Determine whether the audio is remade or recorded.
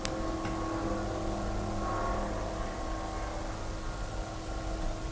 recorded